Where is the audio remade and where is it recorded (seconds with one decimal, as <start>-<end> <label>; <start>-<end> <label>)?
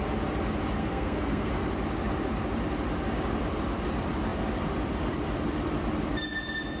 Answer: 0.0-0.8 recorded; 0.8-1.5 remade; 1.5-6.8 recorded